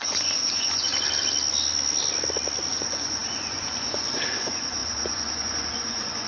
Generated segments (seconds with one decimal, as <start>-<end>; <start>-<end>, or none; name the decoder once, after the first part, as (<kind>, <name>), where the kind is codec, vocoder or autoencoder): 0.0-0.9 (vocoder, Vocos); 2.7-6.3